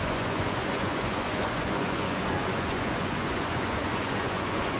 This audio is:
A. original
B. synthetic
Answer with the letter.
B